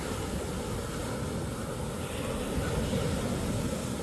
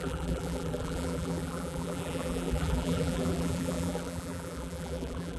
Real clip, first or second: first